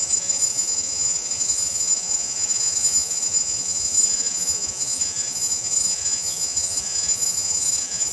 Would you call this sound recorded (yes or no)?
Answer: no